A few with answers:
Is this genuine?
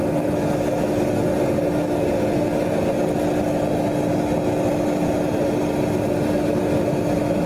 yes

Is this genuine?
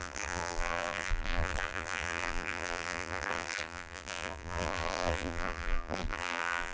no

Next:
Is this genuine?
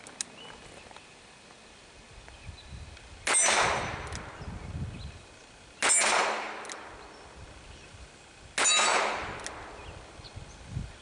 yes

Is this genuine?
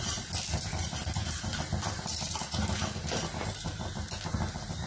yes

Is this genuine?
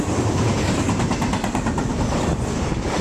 yes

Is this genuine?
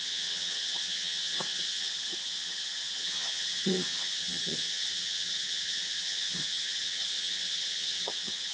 no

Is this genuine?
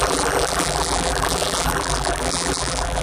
no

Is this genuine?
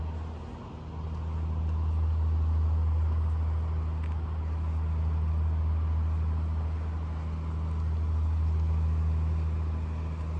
yes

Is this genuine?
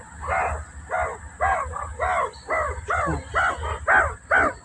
yes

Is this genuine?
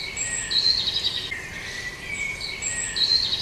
yes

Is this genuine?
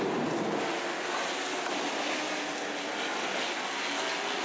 yes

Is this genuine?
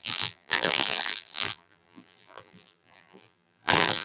no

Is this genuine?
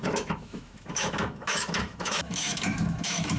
no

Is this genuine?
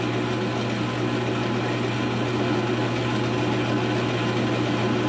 yes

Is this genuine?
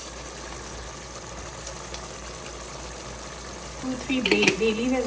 yes